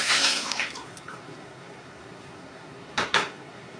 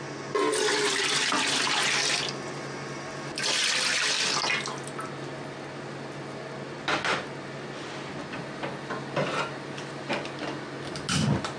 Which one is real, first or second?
second